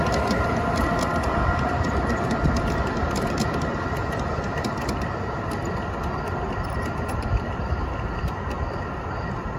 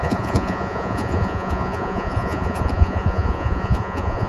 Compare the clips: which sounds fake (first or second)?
second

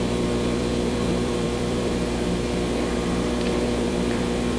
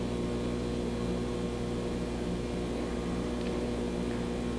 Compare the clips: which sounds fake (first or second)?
first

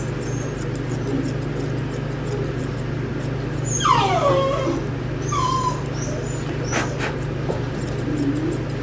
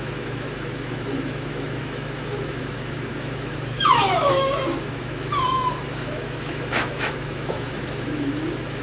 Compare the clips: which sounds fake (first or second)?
second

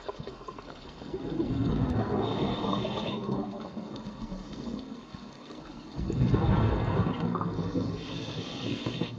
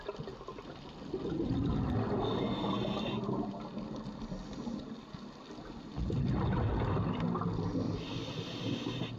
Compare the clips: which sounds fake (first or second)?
first